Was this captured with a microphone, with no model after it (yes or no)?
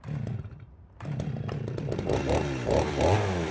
yes